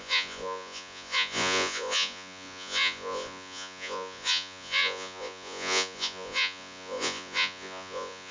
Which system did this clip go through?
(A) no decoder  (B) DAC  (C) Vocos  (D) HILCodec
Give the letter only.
C